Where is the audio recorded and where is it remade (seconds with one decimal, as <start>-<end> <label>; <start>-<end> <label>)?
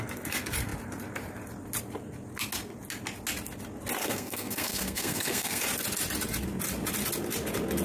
0.0-4.0 recorded; 4.0-5.6 remade; 5.6-7.8 recorded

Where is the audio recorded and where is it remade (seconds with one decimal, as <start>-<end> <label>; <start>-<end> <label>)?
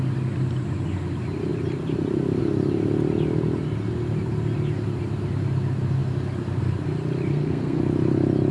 0.0-7.3 recorded; 7.3-7.8 remade; 7.8-8.5 recorded